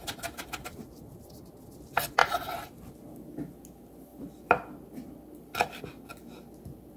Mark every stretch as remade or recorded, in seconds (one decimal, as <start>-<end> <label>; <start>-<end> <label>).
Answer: 0.0-1.2 remade; 1.2-2.2 recorded; 2.2-2.8 remade; 2.8-4.1 recorded; 4.1-5.8 remade; 5.8-7.0 recorded